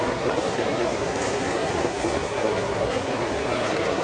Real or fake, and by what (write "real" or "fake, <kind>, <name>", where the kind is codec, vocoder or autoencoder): fake, codec, SNAC